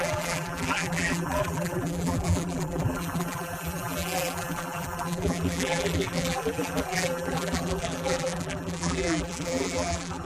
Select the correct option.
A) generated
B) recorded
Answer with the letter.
A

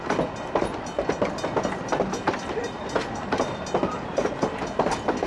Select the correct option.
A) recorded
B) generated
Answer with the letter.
A